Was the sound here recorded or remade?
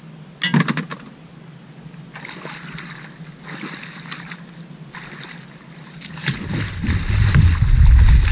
recorded